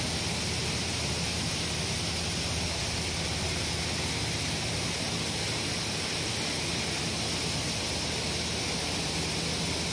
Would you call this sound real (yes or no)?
yes